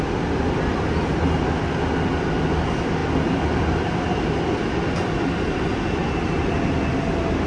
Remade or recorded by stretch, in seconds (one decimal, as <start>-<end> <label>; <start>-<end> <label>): 0.0-7.5 recorded